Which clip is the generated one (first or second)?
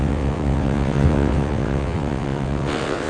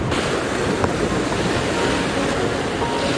first